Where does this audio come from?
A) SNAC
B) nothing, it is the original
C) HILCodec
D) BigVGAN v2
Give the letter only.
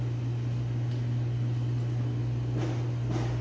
B